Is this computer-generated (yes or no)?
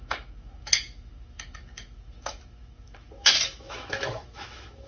yes